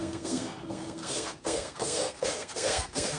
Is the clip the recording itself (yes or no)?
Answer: no